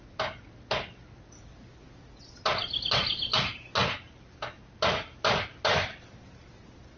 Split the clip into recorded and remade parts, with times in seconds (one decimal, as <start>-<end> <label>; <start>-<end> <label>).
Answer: 0.0-7.0 recorded